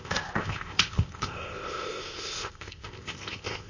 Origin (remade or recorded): remade